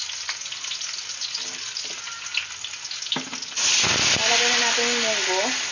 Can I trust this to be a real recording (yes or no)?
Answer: yes